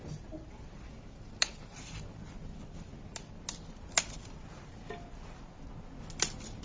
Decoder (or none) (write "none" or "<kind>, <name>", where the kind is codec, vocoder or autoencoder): none